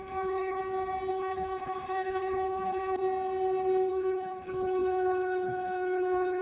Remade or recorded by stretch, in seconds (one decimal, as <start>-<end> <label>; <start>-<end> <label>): 0.0-0.6 remade; 0.6-1.1 recorded; 1.1-3.0 remade; 3.0-3.9 recorded; 3.9-6.4 remade